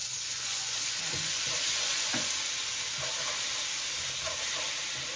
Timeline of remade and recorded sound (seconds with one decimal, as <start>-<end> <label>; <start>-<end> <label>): 0.0-2.3 remade; 2.3-5.2 recorded